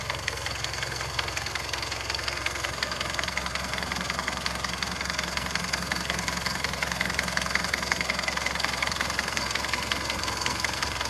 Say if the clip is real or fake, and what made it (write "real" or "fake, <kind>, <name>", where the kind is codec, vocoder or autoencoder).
fake, codec, SNAC